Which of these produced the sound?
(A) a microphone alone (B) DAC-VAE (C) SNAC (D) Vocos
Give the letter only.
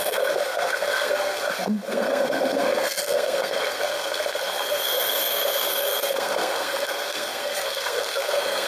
C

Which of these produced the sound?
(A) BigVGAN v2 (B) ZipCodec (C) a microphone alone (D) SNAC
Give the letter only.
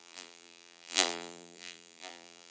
A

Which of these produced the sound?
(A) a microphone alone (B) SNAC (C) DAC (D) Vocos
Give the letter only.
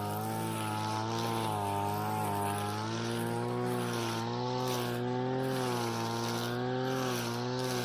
A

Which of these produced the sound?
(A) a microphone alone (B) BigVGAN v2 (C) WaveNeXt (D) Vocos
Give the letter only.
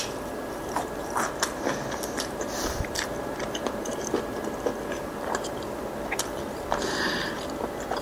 B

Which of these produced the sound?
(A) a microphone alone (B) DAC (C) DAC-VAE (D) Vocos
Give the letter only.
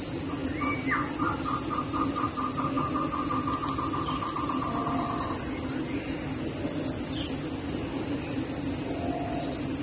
A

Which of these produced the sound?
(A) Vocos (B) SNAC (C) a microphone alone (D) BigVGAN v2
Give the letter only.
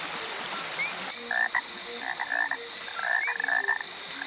C